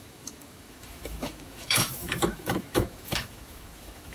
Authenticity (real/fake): fake